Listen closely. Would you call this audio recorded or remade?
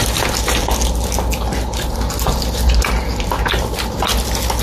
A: recorded